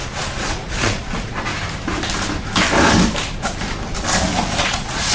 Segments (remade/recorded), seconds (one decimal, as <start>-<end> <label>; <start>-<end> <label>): 0.0-1.5 remade; 1.5-4.6 recorded; 4.6-5.1 remade